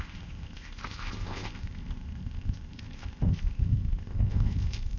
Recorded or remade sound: remade